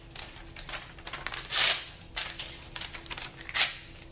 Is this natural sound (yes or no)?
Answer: yes